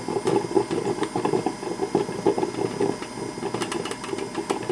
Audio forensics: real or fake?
real